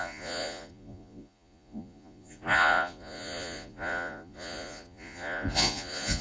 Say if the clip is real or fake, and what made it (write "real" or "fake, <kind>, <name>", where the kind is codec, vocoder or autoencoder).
fake, vocoder, Vocos